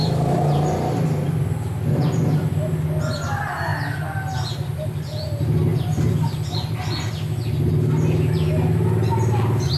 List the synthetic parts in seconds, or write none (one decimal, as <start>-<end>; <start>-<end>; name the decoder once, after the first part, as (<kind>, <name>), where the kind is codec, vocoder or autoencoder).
0.0-0.7 (vocoder, BigVGAN v2)